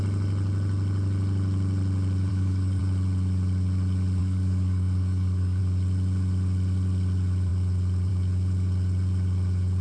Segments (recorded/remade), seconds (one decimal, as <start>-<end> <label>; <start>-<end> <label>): 0.0-2.3 recorded; 2.3-2.8 remade; 2.8-4.2 recorded; 4.2-5.6 remade; 5.6-9.8 recorded